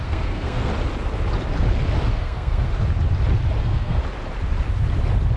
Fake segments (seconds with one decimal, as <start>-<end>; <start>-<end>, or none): 0.0-0.7; 2.1-2.7; 3.6-4.0